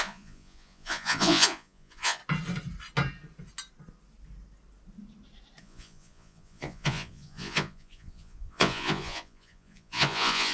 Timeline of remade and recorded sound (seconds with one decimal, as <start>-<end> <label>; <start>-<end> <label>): 0.0-2.2 remade; 2.2-5.6 recorded; 5.6-10.5 remade